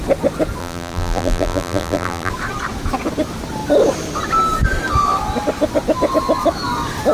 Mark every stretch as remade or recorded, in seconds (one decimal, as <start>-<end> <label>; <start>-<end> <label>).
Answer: 0.0-0.6 recorded; 0.6-2.3 remade; 2.3-7.1 recorded